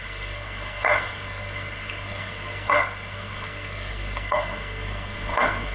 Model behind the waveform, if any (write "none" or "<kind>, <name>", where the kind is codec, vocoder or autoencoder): codec, SNAC